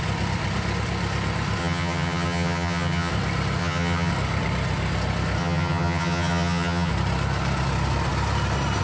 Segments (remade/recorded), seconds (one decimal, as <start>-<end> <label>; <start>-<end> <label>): 0.0-1.6 recorded; 1.6-3.1 remade; 3.1-3.6 recorded; 3.6-4.1 remade; 4.1-5.4 recorded; 5.4-6.9 remade; 6.9-8.8 recorded